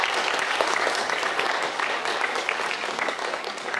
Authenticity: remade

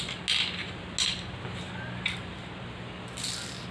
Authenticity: recorded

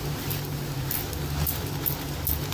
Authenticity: recorded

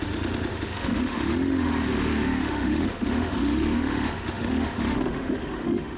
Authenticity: remade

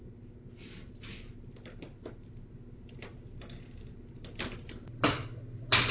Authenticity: recorded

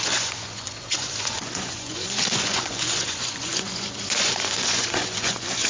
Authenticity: remade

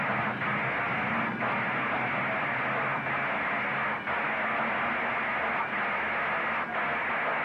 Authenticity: recorded